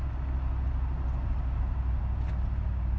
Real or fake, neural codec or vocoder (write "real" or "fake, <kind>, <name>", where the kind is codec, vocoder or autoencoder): real